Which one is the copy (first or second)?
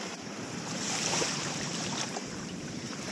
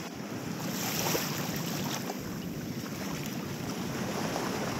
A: first